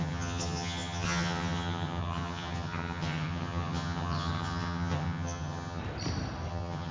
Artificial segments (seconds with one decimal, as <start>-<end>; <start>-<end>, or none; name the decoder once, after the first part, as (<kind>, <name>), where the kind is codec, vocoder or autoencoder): 0.0-5.8 (vocoder, HiFi-GAN); 6.5-6.9